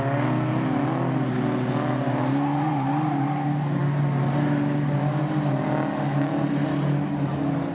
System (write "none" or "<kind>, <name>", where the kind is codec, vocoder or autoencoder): none